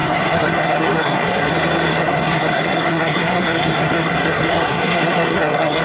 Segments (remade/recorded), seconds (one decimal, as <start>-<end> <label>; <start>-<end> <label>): 0.0-1.5 remade; 1.5-1.9 recorded; 1.9-5.8 remade